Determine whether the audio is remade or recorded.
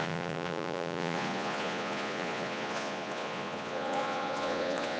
remade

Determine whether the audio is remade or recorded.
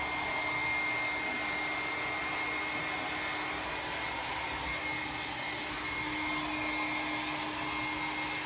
recorded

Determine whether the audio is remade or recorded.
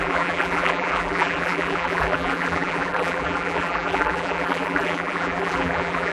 remade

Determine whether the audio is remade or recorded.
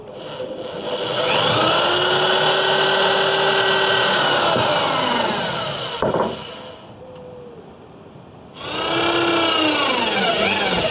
recorded